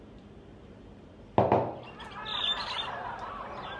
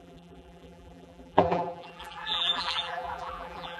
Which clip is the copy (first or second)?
second